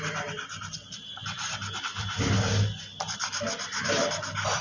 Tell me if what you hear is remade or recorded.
recorded